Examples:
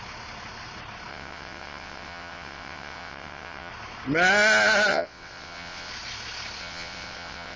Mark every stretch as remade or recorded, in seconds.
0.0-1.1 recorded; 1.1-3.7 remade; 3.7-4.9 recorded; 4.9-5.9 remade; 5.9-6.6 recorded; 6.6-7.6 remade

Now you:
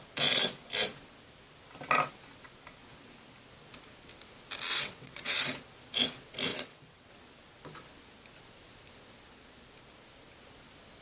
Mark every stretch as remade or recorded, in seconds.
0.0-4.7 recorded; 4.7-5.6 remade; 5.6-6.5 recorded; 6.5-7.1 remade; 7.1-11.0 recorded

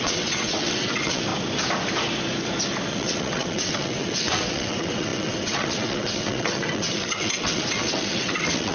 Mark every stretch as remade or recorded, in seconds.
0.0-1.3 remade; 1.3-2.9 recorded; 2.9-8.7 remade

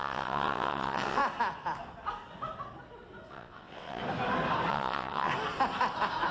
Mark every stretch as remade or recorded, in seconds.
0.0-1.2 remade; 1.2-3.3 recorded; 3.3-4.0 remade; 4.0-4.7 recorded; 4.7-5.3 remade; 5.3-6.3 recorded

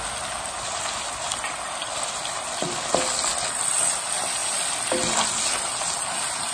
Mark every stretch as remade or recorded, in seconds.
0.0-6.5 recorded

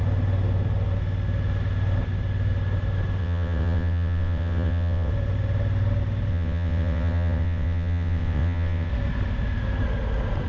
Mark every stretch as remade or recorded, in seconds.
0.0-3.2 recorded; 3.2-5.1 remade; 5.1-6.3 recorded; 6.3-8.9 remade; 8.9-10.5 recorded